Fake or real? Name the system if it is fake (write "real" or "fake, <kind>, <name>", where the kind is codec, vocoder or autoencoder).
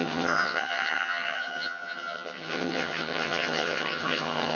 fake, vocoder, HiFi-GAN